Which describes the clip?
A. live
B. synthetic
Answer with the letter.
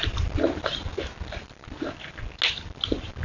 A